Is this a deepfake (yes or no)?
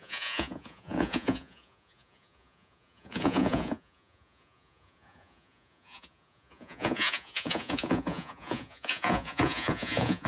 yes